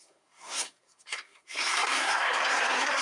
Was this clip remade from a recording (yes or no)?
yes